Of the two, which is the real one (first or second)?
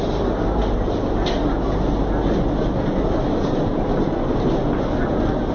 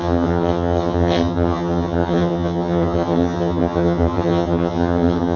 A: first